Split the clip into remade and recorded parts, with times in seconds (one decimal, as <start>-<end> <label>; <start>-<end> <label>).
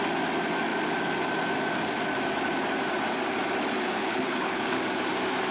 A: 0.0-4.0 recorded; 4.0-4.8 remade; 4.8-5.5 recorded